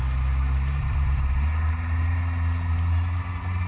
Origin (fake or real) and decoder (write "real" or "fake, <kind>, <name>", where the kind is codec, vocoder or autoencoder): real